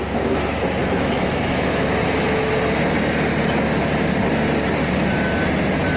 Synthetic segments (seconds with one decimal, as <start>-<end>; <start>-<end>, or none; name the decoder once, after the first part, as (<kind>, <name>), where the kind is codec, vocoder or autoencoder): 0.8-2.5 (autoencoder, DAC-VAE)